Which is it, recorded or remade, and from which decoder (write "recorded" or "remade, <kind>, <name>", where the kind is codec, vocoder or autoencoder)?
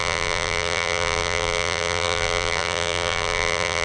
remade, vocoder, BigVGAN v2